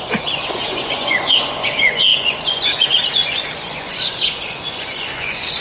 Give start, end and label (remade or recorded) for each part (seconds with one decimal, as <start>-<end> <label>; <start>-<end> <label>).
0.0-5.6 remade